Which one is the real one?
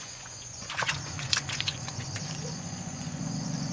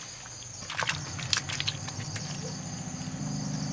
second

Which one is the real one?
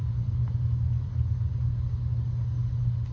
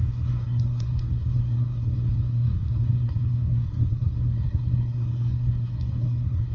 first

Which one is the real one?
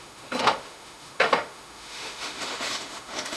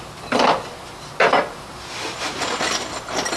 second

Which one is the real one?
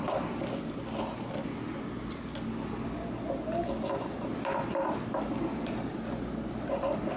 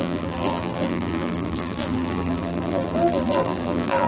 first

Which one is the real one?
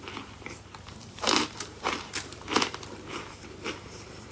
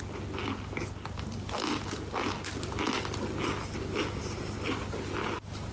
second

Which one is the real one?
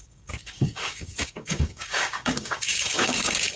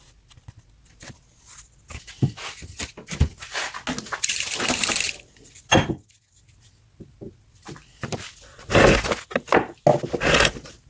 second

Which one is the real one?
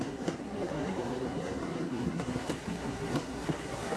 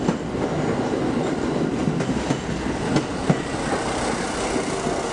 second